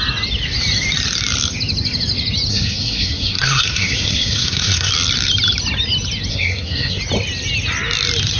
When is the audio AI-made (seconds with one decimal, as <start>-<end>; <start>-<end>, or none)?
2.5-4.9; 6.3-7.0